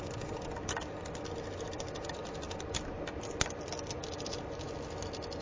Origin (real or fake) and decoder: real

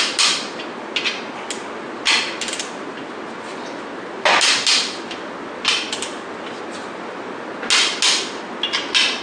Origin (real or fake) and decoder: real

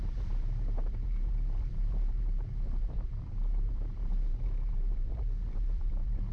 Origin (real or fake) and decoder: fake, vocoder, BigVGAN v2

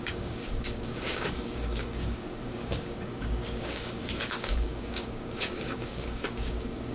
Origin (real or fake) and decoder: fake, codec, DAC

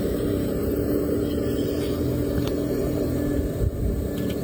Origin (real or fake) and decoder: real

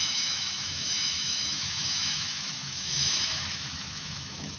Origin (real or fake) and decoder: fake, autoencoder, DAC-VAE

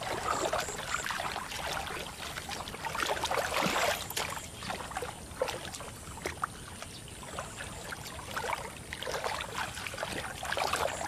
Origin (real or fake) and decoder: real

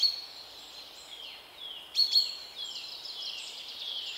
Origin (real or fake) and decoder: real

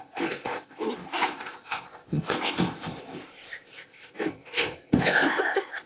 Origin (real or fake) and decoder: fake, codec, ZipCodec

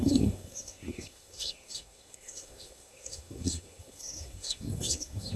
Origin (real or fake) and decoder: fake, codec, SNAC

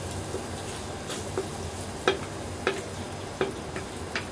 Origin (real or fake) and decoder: real